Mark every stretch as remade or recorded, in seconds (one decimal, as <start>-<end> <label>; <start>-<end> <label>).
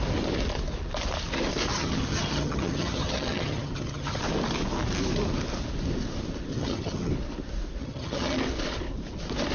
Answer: 0.0-1.7 recorded; 1.7-4.2 remade; 4.2-6.5 recorded; 6.5-7.1 remade; 7.1-7.8 recorded; 7.8-8.4 remade; 8.4-9.5 recorded